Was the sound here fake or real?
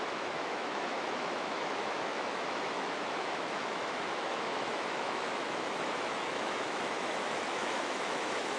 fake